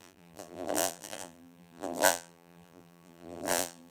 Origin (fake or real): fake